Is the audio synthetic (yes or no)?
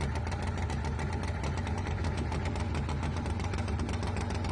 no